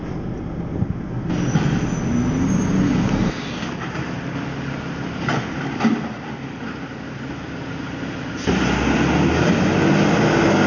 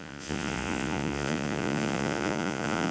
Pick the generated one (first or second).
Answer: second